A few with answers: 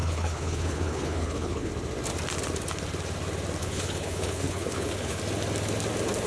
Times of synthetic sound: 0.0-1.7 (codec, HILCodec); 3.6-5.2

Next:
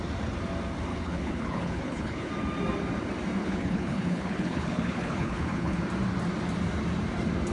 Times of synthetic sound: 0.9-2.3 (codec, HILCodec); 3.4-5.8

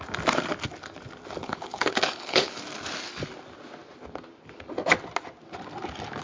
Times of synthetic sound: 1.4-2.6 (codec, HILCodec)

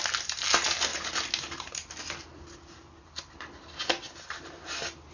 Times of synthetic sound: none

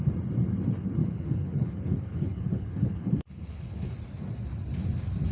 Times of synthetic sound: 1.0-3.9 (codec, HILCodec)

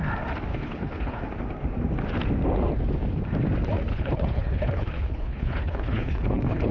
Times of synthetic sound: 0.5-1.2 (codec, HILCodec); 3.9-6.7

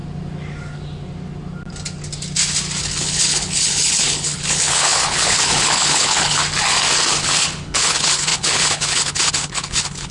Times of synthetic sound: 2.8-6.4 (codec, HILCodec); 7.2-10.1

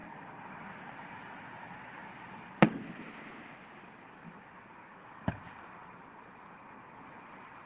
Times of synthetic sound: none